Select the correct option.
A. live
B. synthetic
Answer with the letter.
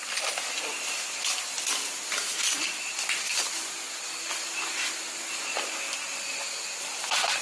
A